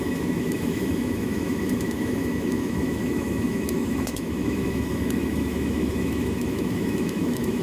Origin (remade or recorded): remade